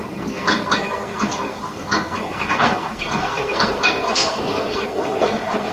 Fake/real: fake